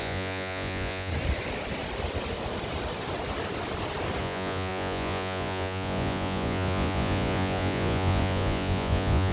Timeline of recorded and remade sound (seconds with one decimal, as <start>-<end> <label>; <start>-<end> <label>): 0.0-1.1 remade; 1.1-4.2 recorded; 4.2-9.3 remade